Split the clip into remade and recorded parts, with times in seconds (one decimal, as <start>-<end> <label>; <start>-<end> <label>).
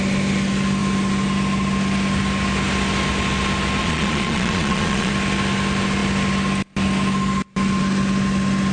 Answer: 0.0-3.8 recorded; 3.8-5.1 remade; 5.1-8.7 recorded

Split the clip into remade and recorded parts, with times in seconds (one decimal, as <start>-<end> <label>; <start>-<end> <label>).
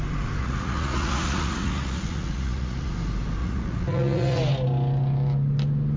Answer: 0.0-0.4 recorded; 0.4-2.9 remade; 2.9-3.4 recorded; 3.4-4.4 remade; 4.4-6.0 recorded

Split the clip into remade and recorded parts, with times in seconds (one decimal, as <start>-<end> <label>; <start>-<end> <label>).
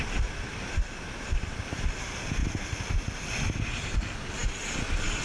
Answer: 0.0-5.2 recorded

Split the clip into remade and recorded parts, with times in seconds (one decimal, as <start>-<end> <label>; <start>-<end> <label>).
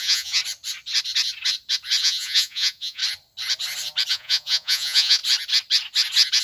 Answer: 0.0-0.4 remade; 0.4-2.0 recorded; 2.0-3.0 remade; 3.0-4.1 recorded; 4.1-5.2 remade; 5.2-6.4 recorded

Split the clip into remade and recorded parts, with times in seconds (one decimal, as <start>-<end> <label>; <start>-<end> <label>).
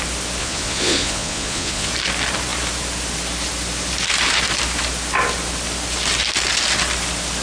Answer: 0.0-0.4 recorded; 0.4-1.9 remade; 1.9-7.4 recorded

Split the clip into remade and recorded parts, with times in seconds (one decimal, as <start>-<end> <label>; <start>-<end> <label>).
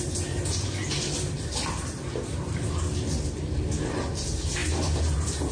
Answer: 0.0-5.5 recorded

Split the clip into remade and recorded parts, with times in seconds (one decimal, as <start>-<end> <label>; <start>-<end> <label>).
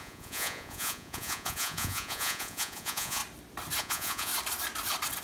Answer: 0.0-3.2 remade; 3.2-3.8 recorded; 3.8-4.3 remade; 4.3-5.2 recorded